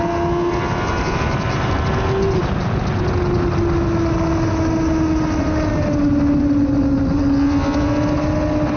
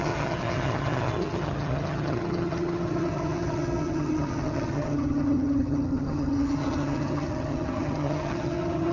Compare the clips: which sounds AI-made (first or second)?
second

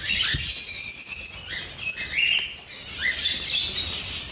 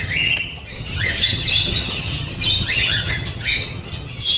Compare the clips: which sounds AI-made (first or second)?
second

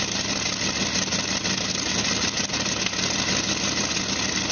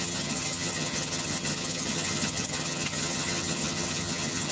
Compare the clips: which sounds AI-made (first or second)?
second